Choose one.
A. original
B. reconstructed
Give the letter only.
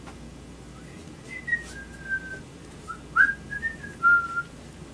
A